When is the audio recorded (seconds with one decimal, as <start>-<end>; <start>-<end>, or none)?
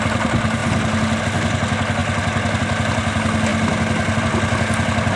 0.0-5.2